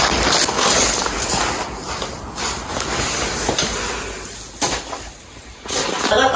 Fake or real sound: real